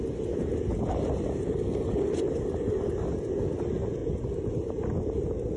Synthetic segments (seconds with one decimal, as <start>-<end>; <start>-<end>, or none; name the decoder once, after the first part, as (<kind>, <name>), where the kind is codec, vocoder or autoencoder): none